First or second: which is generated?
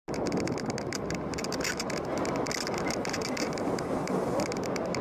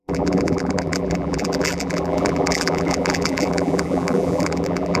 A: second